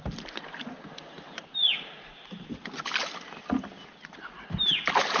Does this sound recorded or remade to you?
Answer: recorded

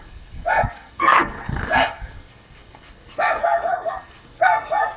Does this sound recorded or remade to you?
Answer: remade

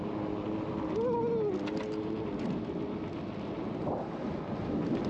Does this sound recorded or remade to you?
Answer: recorded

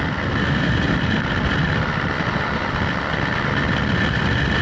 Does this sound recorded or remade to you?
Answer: recorded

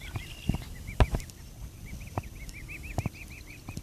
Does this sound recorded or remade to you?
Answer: recorded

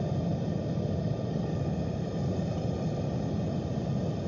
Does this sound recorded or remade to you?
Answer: recorded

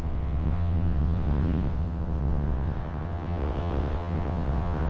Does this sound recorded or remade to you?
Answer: remade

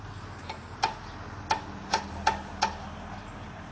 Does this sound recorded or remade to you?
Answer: recorded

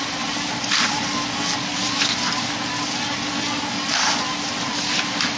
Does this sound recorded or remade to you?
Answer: recorded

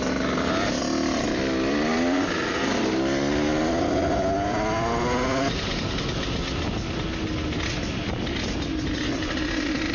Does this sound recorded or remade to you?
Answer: recorded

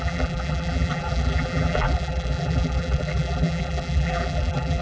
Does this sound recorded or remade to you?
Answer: remade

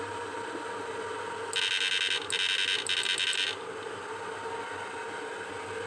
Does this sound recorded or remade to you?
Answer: recorded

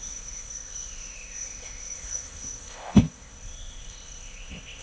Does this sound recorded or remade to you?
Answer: remade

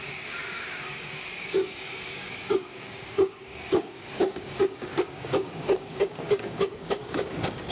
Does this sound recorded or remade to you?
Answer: remade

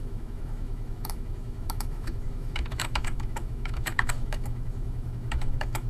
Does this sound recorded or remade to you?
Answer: remade